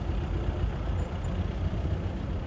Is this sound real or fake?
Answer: fake